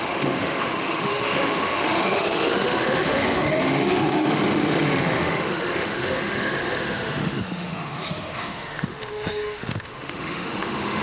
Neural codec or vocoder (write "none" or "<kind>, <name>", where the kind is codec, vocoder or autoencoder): autoencoder, DAC-VAE